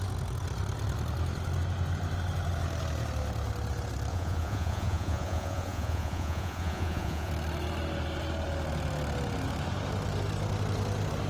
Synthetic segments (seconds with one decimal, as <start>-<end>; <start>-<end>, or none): 4.1-7.3